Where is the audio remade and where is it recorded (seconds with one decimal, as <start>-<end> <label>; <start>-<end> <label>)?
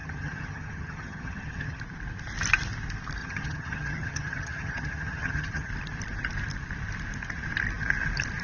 0.0-1.8 remade; 1.8-3.2 recorded; 3.2-5.7 remade; 5.7-8.4 recorded